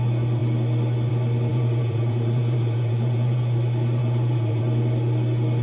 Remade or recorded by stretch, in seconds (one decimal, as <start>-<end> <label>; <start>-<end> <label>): 0.0-1.5 recorded; 1.5-3.4 remade; 3.4-4.0 recorded; 4.0-4.6 remade; 4.6-5.6 recorded